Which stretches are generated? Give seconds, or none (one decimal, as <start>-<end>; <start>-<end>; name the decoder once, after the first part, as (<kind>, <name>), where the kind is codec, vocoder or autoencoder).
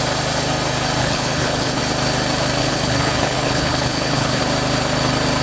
1.0-1.8 (codec, HILCodec); 2.6-4.4